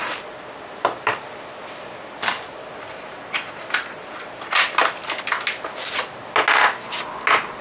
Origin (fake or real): real